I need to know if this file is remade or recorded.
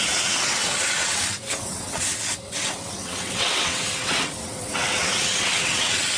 remade